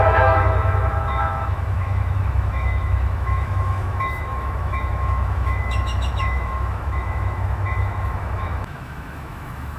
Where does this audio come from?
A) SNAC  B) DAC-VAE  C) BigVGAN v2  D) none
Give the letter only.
B